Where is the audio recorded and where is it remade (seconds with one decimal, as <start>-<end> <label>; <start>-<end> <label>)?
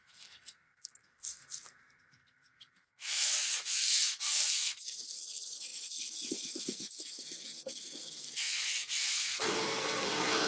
0.0-10.5 remade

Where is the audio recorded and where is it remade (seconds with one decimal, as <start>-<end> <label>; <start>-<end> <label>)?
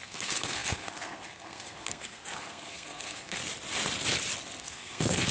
0.0-3.4 remade; 3.4-4.6 recorded; 4.6-5.3 remade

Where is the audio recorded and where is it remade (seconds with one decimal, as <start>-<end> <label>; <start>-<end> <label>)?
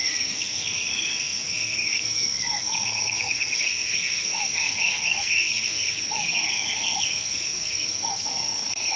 0.0-9.0 remade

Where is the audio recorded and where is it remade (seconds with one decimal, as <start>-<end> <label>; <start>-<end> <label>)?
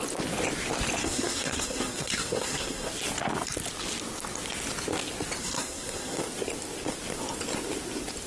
0.0-1.0 recorded; 1.0-2.9 remade; 2.9-5.4 recorded; 5.4-6.2 remade; 6.2-8.3 recorded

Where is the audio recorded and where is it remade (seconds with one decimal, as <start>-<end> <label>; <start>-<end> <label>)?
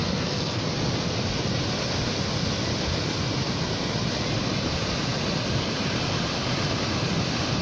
0.0-0.6 remade; 0.6-7.6 recorded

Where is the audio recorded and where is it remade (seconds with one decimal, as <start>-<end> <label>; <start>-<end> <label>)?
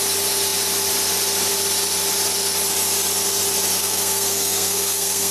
0.0-3.8 recorded; 3.8-5.3 remade